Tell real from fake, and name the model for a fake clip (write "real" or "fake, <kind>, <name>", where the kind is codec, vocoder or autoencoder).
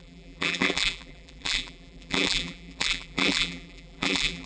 fake, vocoder, BigVGAN v2